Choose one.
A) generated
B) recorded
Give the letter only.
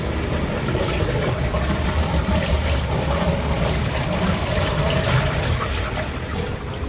B